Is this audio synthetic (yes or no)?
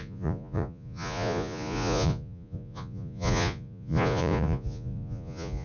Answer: yes